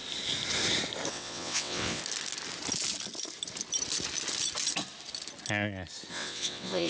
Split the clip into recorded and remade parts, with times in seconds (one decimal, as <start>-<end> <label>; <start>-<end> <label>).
0.0-1.1 recorded; 1.1-2.0 remade; 2.0-6.1 recorded; 6.1-6.9 remade